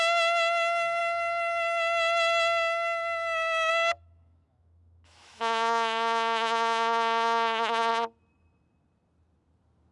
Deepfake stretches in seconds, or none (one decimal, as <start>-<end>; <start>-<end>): 0.0-1.0; 3.7-7.9